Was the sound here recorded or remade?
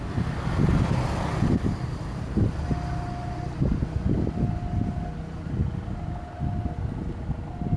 recorded